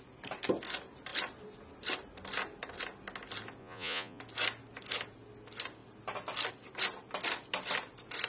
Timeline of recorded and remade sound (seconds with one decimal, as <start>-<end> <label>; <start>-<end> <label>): 0.0-3.6 recorded; 3.6-4.2 remade; 4.2-8.3 recorded